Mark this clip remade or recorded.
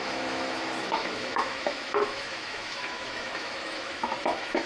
remade